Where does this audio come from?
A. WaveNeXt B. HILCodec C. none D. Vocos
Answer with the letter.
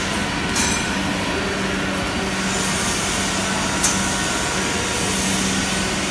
C